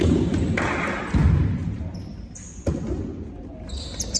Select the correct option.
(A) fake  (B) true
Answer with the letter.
B